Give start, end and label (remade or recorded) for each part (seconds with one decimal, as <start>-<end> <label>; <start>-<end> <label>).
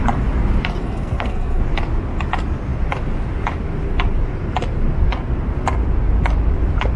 0.0-0.8 recorded; 0.8-1.6 remade; 1.6-7.0 recorded